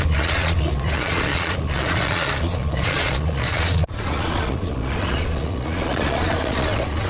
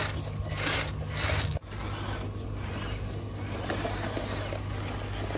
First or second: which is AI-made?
first